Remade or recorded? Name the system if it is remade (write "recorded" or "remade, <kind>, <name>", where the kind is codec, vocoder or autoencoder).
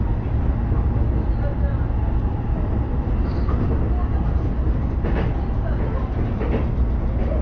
recorded